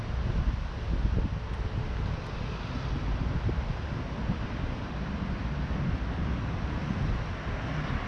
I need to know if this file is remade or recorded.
recorded